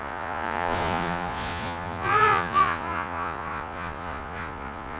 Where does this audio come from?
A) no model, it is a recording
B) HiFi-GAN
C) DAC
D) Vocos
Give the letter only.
D